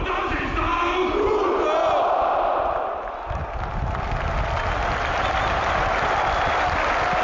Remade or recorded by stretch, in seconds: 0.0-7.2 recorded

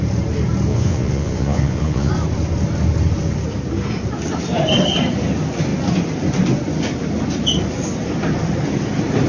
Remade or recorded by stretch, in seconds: 0.0-0.7 recorded; 0.7-2.1 remade; 2.1-9.3 recorded

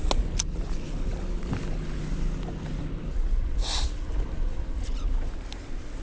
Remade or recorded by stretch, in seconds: 0.0-6.0 recorded

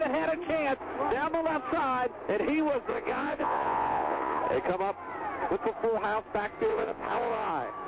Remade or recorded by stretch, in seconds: 0.0-2.9 recorded; 2.9-4.4 remade; 4.4-6.7 recorded; 6.7-7.5 remade; 7.5-7.9 recorded

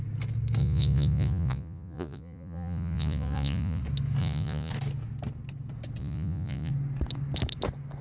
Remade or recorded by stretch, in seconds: 0.0-0.6 recorded; 0.6-3.8 remade; 3.8-4.2 recorded; 4.2-4.7 remade; 4.7-6.0 recorded; 6.0-6.7 remade; 6.7-8.0 recorded

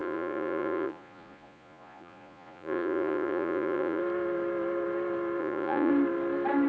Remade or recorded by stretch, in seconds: 0.0-4.0 remade; 4.0-5.4 recorded; 5.4-5.9 remade; 5.9-6.7 recorded

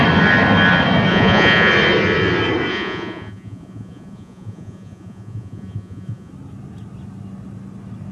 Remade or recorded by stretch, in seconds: 0.0-1.1 recorded; 1.1-1.7 remade; 1.7-2.7 recorded; 2.7-6.3 remade; 6.3-8.1 recorded